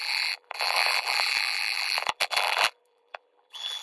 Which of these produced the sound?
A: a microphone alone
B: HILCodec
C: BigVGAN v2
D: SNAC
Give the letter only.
C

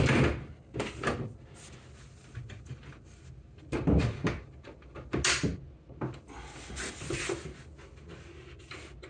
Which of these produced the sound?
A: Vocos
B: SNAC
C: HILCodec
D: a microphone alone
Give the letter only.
D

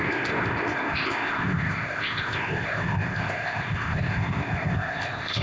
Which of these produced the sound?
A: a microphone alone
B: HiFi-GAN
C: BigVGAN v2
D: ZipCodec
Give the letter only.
D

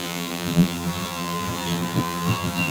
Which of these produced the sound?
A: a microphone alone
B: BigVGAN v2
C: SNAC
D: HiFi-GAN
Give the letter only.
B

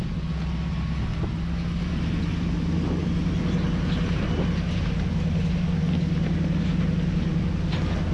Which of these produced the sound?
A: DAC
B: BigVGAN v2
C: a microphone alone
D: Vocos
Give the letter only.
C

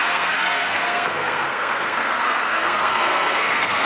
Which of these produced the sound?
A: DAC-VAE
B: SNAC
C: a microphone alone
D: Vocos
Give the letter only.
B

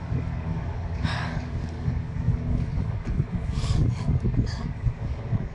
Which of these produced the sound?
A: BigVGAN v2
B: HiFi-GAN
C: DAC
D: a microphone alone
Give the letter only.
C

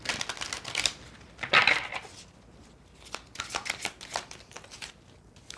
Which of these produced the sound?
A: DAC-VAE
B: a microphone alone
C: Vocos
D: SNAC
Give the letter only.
B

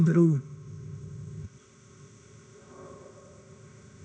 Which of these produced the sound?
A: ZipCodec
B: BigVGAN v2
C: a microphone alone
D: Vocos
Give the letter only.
A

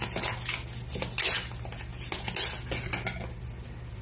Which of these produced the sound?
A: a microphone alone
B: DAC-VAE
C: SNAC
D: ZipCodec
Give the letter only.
A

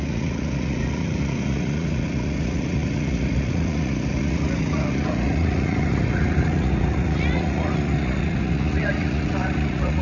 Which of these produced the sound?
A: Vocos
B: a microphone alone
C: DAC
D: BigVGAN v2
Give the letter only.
A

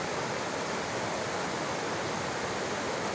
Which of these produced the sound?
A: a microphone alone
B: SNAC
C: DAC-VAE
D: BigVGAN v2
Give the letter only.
A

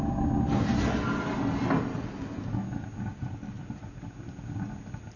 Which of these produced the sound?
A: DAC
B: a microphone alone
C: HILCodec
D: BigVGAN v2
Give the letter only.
B